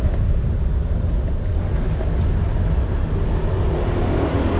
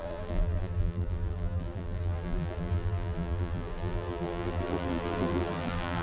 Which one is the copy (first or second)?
second